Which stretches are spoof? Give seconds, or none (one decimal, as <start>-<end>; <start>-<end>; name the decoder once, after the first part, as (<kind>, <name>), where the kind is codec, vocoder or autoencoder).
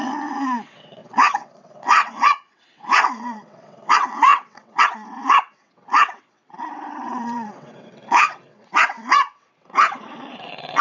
0.0-10.8 (vocoder, WaveNeXt)